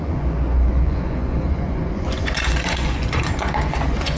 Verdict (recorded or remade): remade